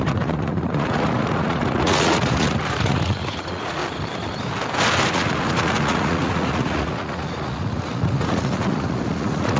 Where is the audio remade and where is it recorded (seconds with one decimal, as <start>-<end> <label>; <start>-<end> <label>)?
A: 0.0-3.8 remade; 3.8-5.1 recorded; 5.1-9.6 remade